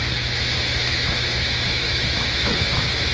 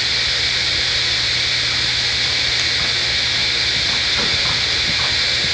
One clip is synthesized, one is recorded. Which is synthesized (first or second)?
first